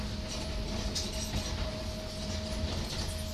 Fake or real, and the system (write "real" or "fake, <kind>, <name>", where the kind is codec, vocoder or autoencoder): real